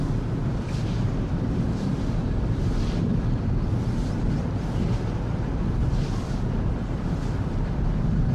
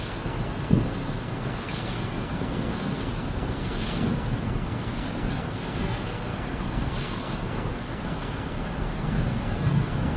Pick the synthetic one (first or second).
second